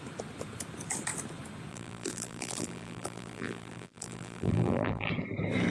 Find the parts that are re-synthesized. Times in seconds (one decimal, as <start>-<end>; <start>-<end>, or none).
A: 1.7-5.1